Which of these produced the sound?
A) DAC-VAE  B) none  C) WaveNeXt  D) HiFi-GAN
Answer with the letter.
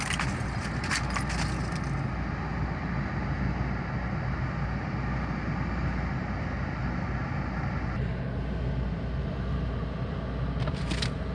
B